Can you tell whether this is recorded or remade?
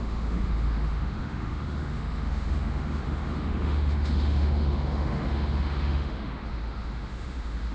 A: remade